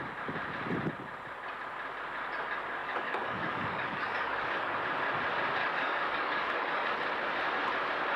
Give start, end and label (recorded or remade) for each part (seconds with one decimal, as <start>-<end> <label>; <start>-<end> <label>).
0.0-2.8 recorded; 2.8-4.8 remade; 4.8-5.6 recorded; 5.6-6.9 remade; 6.9-8.2 recorded